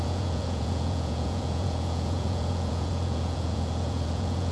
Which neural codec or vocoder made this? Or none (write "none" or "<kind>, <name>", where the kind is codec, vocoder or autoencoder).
vocoder, Vocos